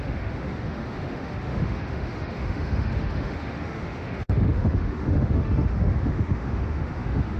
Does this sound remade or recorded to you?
remade